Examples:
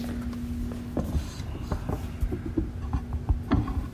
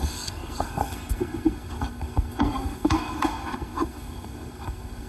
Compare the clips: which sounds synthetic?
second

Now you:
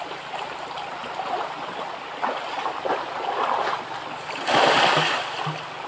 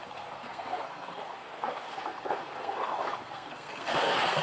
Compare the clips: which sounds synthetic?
second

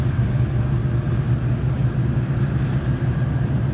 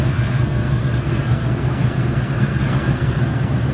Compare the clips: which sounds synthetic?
second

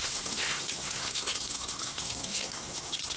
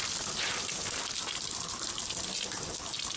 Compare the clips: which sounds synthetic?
first